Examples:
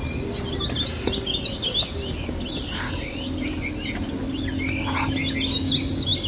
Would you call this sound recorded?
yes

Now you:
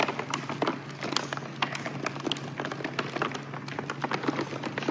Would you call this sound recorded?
yes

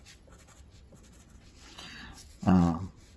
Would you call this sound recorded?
no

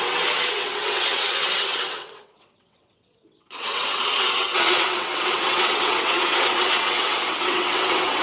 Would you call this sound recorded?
no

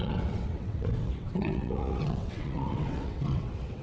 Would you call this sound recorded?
no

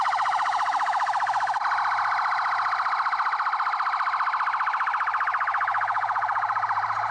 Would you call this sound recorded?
yes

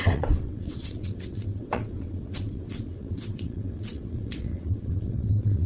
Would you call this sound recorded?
no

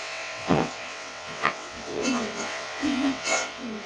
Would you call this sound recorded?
no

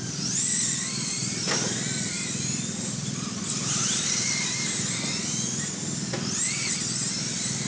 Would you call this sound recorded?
yes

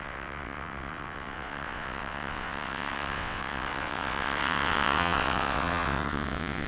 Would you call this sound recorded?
no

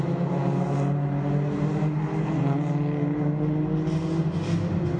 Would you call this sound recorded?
yes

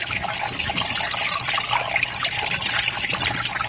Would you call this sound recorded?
yes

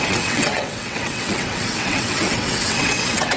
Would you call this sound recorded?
no